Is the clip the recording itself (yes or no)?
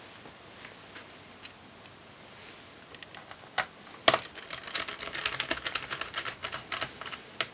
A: yes